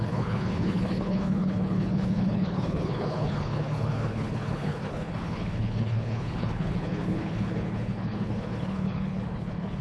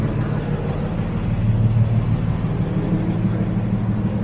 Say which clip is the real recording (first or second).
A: second